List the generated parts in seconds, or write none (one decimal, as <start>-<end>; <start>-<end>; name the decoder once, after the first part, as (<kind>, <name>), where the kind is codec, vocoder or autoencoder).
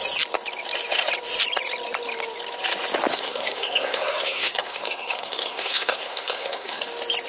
3.1-6.8 (codec, SNAC)